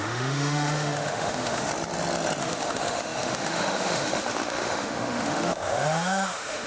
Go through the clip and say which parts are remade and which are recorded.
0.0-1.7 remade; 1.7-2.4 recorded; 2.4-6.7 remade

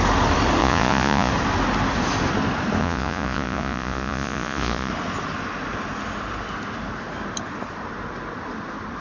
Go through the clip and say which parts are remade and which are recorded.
0.0-0.6 recorded; 0.6-1.3 remade; 1.3-2.8 recorded; 2.8-4.9 remade; 4.9-9.0 recorded

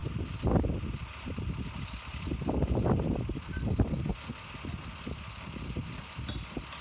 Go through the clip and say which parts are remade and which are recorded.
0.0-6.8 recorded